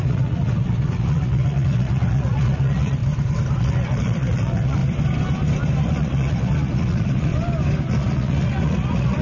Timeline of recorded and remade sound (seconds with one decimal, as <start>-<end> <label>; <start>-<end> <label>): 0.0-3.0 remade; 3.0-3.6 recorded; 3.6-4.8 remade; 4.8-5.8 recorded; 5.8-7.3 remade; 7.3-7.9 recorded; 7.9-9.2 remade